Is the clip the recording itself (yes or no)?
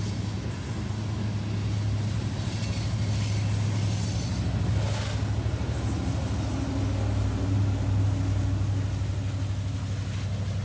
yes